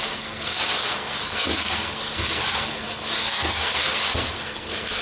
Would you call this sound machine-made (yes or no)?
yes